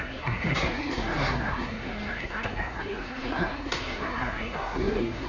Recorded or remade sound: remade